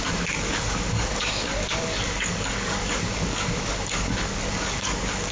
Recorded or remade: remade